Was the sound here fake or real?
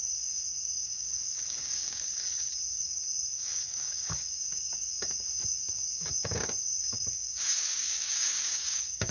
fake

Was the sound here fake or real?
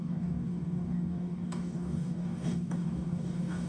fake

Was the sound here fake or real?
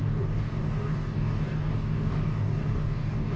fake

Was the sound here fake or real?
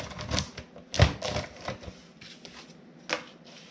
real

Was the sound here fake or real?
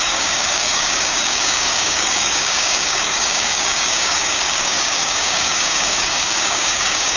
fake